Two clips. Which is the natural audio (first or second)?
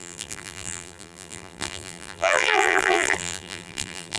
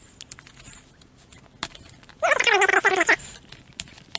second